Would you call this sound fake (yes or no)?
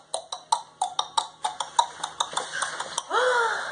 no